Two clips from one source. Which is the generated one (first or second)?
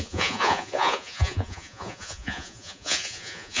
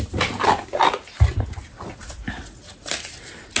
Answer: first